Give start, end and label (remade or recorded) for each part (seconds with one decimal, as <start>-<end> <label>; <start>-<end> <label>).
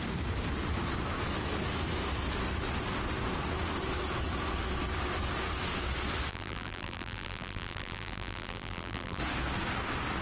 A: 0.0-6.3 recorded; 6.3-9.2 remade; 9.2-10.2 recorded